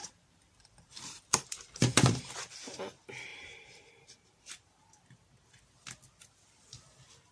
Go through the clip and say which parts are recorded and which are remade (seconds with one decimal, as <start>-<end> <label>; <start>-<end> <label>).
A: 0.0-2.5 remade; 2.5-3.3 recorded; 3.3-4.5 remade; 4.5-7.3 recorded